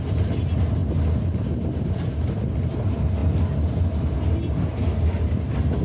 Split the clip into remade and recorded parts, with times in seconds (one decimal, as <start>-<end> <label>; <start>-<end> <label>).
0.0-5.8 recorded